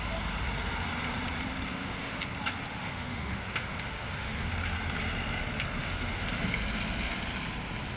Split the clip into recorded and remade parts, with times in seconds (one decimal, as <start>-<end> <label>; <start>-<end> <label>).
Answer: 0.0-1.7 recorded; 1.7-2.2 remade; 2.2-2.7 recorded; 2.7-4.5 remade; 4.5-5.8 recorded; 5.8-6.4 remade; 6.4-8.0 recorded